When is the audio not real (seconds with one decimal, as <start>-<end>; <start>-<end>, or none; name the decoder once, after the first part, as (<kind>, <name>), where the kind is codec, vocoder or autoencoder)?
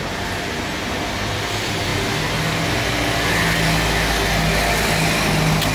none